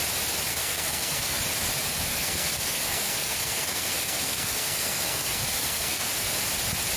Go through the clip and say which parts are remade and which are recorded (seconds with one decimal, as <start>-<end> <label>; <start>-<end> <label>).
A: 0.0-0.5 recorded; 0.5-1.4 remade; 1.4-2.1 recorded; 2.1-6.1 remade; 6.1-7.0 recorded

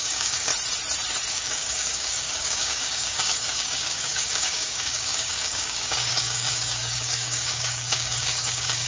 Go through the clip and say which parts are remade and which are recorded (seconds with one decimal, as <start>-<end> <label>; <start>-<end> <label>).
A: 0.0-0.5 remade; 0.5-1.3 recorded; 1.3-8.9 remade

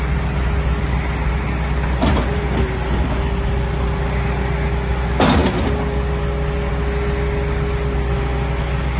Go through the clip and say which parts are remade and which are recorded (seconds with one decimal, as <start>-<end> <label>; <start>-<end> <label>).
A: 0.0-9.0 recorded

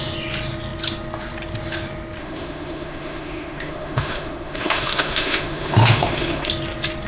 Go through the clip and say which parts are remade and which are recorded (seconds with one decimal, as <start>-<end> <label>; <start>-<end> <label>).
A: 0.0-2.2 recorded; 2.2-6.5 remade; 6.5-7.1 recorded